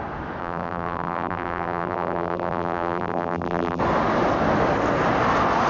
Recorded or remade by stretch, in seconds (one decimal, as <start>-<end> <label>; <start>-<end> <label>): 0.0-0.4 recorded; 0.4-3.8 remade; 3.8-5.7 recorded